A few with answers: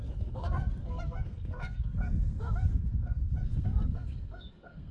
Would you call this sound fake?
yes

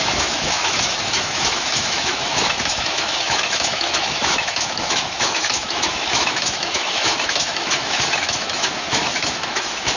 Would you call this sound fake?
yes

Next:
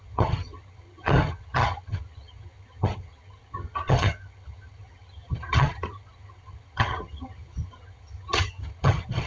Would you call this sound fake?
yes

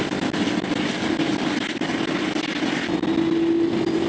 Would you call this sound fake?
no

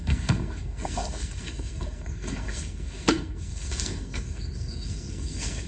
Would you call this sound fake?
yes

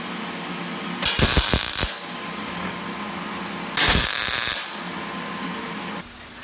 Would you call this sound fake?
no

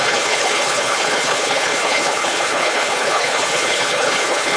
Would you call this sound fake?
yes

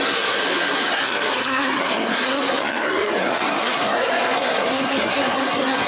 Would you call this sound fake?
yes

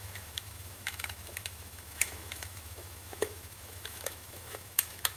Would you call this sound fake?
yes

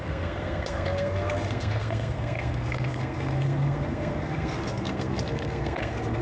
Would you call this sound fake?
yes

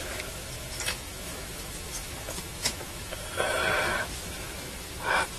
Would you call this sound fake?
yes